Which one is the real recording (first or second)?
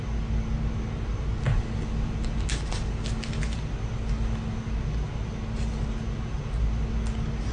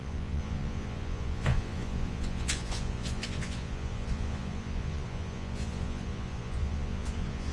first